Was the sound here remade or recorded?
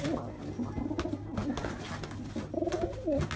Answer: recorded